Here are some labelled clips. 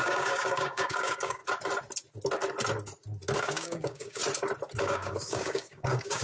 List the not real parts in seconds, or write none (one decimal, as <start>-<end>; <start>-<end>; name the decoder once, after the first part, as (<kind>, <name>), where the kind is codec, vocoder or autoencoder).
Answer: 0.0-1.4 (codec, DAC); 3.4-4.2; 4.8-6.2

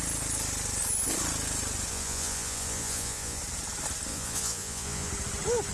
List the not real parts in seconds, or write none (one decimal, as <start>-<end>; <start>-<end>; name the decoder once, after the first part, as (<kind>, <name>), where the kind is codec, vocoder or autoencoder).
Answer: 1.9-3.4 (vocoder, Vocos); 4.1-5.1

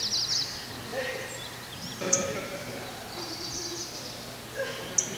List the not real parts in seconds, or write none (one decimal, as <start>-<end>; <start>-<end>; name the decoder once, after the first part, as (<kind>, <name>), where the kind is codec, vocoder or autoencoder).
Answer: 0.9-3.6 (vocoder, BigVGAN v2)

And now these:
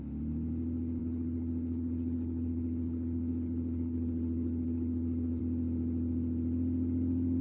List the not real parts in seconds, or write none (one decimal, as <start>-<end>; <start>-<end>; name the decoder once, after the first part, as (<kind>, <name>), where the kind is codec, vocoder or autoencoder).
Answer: 1.0-5.4 (codec, HILCodec)

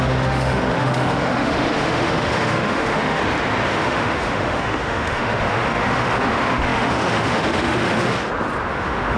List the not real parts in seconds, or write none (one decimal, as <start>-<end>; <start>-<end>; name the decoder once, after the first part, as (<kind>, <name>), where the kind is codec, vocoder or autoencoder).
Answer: 0.0-3.2 (autoencoder, DAC-VAE); 3.7-8.1; 8.7-9.2

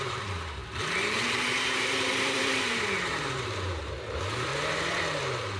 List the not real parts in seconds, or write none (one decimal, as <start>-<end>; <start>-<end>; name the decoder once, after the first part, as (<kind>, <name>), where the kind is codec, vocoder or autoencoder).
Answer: 0.0-4.5 (vocoder, BigVGAN v2)

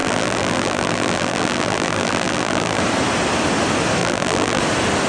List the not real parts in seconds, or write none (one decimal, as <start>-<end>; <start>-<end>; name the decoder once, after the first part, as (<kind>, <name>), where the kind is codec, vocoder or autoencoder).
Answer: 0.0-2.8 (vocoder, BigVGAN v2); 4.0-4.6